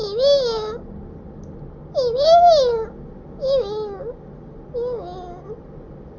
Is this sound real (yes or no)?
yes